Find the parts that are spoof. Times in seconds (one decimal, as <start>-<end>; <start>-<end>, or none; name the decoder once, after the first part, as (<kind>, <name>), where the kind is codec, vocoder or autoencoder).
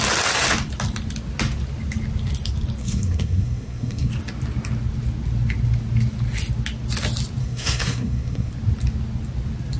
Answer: 2.8-4.1 (codec, SNAC); 7.4-8.5